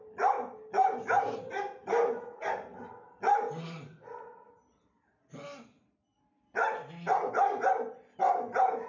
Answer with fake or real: real